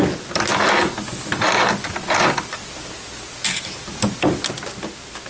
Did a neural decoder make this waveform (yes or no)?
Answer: no